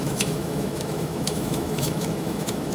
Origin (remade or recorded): remade